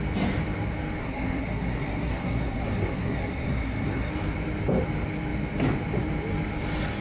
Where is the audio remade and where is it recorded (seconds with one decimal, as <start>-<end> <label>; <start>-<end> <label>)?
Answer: 0.0-1.0 recorded; 1.0-4.1 remade; 4.1-7.0 recorded